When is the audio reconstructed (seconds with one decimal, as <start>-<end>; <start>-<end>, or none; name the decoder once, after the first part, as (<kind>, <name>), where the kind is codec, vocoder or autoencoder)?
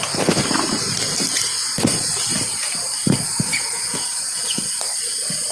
3.5-4.6 (vocoder, Vocos)